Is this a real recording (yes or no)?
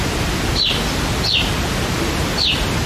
yes